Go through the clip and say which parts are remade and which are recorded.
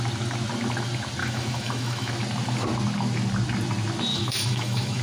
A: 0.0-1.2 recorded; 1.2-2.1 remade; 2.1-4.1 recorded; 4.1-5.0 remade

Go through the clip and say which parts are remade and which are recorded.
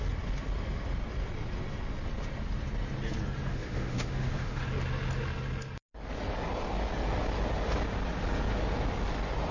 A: 0.0-3.5 recorded; 3.5-4.6 remade; 4.6-9.5 recorded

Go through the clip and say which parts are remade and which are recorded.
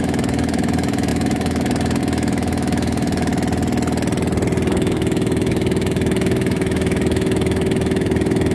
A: 0.0-3.3 remade; 3.3-4.7 recorded; 4.7-8.5 remade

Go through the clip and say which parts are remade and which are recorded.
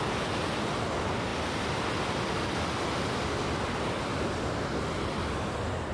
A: 0.0-5.9 recorded